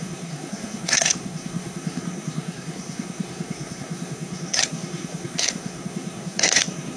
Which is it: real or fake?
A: fake